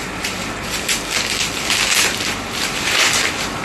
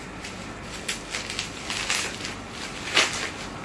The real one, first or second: second